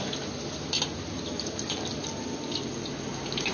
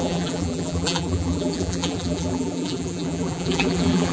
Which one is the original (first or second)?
first